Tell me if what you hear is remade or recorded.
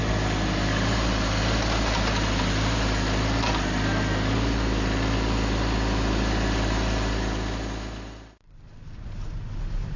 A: recorded